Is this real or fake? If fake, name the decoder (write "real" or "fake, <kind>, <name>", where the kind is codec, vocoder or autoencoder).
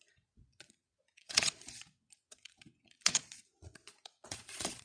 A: fake, vocoder, Vocos